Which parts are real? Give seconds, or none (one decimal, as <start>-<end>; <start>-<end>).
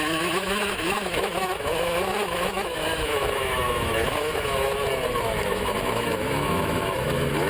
4.7-5.2